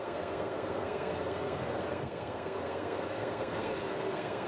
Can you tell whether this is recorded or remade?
remade